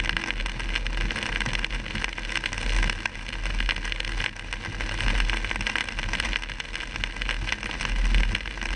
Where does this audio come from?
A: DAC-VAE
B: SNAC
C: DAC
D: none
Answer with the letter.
D